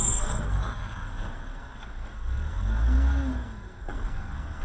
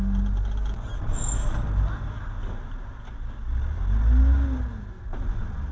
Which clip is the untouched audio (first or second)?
second